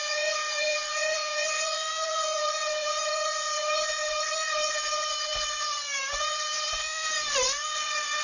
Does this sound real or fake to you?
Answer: fake